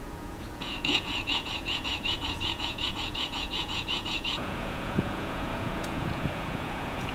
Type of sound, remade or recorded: remade